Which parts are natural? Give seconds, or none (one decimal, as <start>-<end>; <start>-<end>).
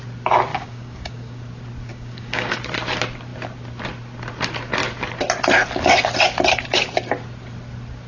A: 0.0-0.5; 1.4-1.9; 2.6-8.1